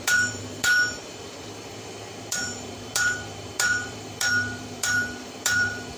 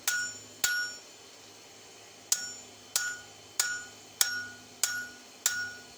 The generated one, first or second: first